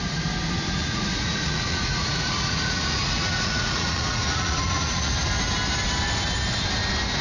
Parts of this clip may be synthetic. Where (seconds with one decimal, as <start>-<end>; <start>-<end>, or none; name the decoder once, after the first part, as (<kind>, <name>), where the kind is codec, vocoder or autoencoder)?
0.8-5.1 (vocoder, Vocos)